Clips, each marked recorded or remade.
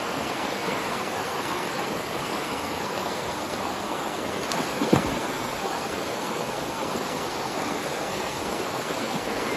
remade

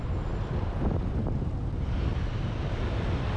recorded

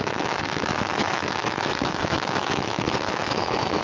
remade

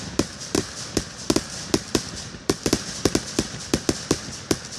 remade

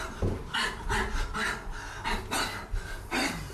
recorded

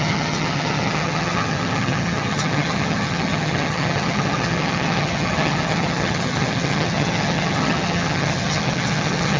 remade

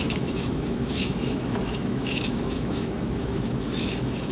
remade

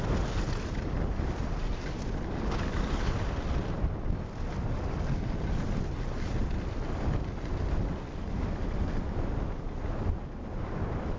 recorded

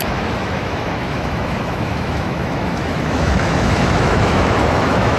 remade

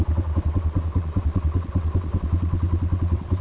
remade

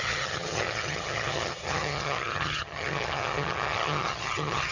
remade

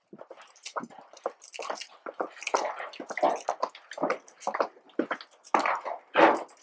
recorded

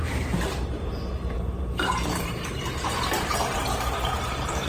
remade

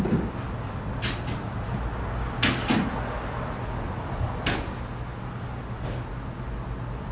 recorded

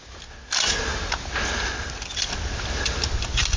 recorded